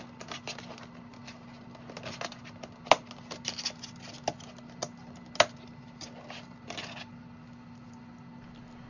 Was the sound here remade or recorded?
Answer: recorded